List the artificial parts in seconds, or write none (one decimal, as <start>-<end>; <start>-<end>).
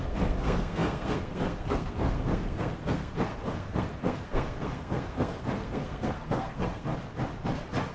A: 0.0-6.9